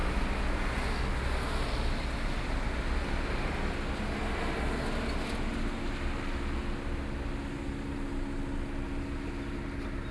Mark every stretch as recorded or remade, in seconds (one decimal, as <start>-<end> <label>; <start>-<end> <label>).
0.0-10.1 recorded